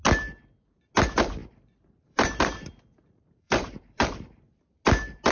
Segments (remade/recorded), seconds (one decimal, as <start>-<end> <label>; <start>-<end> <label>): 0.0-1.4 recorded; 1.4-4.6 remade; 4.6-5.3 recorded